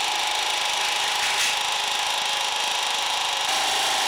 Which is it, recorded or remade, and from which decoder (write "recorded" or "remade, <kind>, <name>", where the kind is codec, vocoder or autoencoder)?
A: recorded